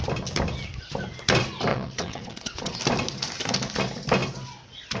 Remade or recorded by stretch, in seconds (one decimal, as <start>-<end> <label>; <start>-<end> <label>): 0.0-1.7 recorded; 1.7-2.8 remade; 2.8-5.0 recorded